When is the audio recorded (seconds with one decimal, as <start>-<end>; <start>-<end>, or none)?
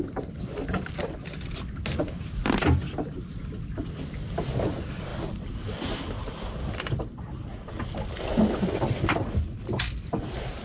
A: 0.0-10.6